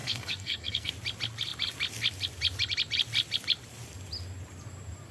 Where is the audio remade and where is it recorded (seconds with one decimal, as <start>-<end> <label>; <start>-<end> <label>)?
0.0-0.9 remade; 0.9-5.1 recorded